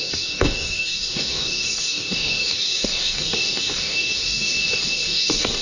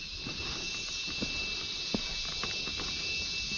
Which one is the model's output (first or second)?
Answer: first